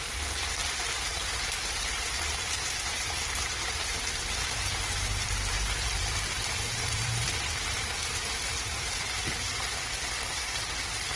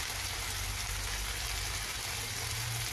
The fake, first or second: first